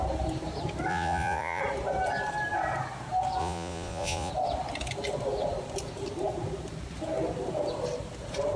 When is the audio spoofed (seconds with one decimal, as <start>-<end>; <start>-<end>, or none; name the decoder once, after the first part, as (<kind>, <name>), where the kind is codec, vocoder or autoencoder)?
0.9-1.6 (vocoder, Vocos); 3.4-4.3